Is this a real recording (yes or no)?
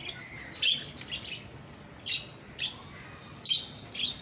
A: yes